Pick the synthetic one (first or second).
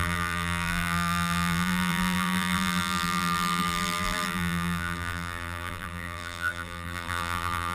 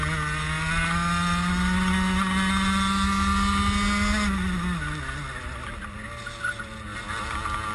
first